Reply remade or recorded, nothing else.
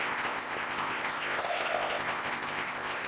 remade